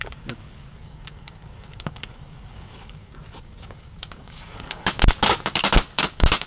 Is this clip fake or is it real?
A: fake